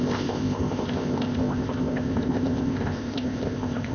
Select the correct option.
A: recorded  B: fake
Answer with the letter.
B